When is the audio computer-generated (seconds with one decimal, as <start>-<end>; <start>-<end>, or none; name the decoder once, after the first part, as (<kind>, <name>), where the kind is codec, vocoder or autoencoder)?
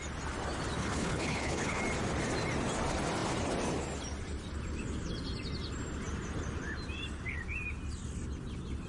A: 0.8-1.8 (codec, HILCodec)